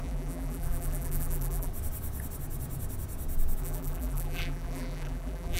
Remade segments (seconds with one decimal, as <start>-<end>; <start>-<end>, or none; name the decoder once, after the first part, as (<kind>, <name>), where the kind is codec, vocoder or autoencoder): 0.0-1.7 (vocoder, BigVGAN v2); 3.6-5.6